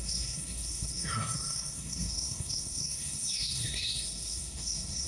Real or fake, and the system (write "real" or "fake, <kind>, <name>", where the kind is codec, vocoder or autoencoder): fake, codec, SNAC